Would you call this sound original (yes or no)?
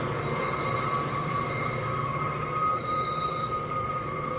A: no